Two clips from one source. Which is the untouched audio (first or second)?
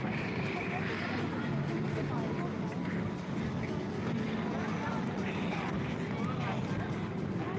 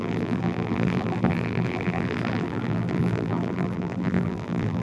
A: first